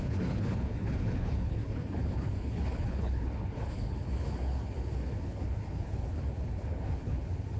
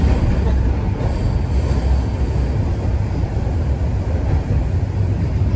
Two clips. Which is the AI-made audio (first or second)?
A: first